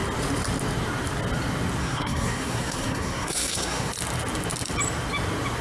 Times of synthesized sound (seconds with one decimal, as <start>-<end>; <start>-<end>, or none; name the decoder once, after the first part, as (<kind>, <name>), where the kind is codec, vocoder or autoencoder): 1.8-3.9 (codec, SNAC)

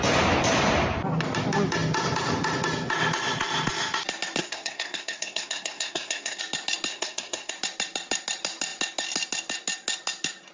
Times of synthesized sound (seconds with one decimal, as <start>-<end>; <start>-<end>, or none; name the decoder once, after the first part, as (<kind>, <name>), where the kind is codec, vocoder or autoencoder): 4.4-6.4 (codec, SNAC); 6.9-7.5